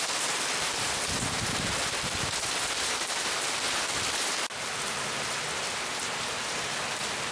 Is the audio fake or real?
real